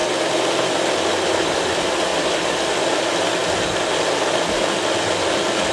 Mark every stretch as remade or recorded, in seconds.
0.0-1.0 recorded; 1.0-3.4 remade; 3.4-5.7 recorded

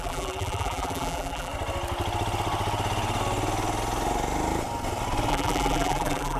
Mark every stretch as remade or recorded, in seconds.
0.0-1.5 remade; 1.5-5.3 recorded; 5.3-6.4 remade

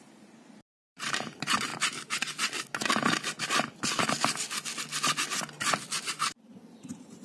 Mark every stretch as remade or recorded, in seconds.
0.0-1.7 remade; 1.7-6.0 recorded; 6.0-7.2 remade

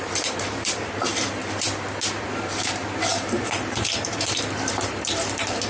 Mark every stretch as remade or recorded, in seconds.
0.0-1.4 remade; 1.4-2.2 recorded; 2.2-5.7 remade

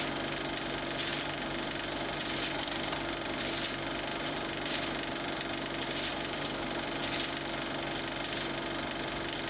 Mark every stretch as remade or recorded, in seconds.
0.0-1.1 recorded; 1.1-3.4 remade; 3.4-4.1 recorded; 4.1-5.4 remade; 5.4-6.1 recorded; 6.1-7.0 remade; 7.0-9.5 recorded